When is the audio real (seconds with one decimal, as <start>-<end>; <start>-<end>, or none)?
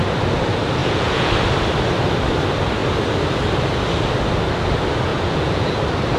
0.0-0.8; 1.3-5.1; 5.7-6.2